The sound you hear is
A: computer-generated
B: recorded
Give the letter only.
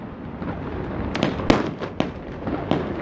B